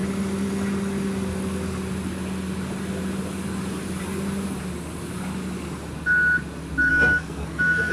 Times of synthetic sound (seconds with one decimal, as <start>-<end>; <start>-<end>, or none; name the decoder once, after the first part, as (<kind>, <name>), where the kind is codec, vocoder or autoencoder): 6.9-7.9 (codec, SNAC)